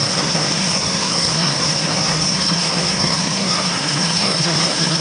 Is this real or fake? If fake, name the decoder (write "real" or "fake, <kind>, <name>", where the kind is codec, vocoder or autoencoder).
fake, codec, SNAC